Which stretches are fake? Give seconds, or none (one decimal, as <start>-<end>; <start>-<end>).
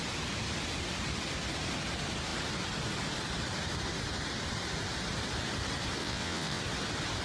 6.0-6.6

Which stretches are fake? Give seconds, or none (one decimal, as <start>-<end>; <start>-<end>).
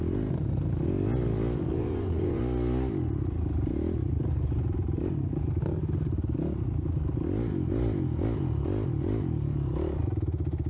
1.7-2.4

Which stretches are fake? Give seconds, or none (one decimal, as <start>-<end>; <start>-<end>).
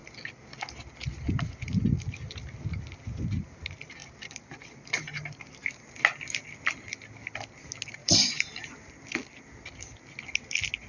4.0-5.9; 8.0-8.9